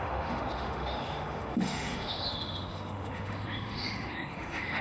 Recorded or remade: remade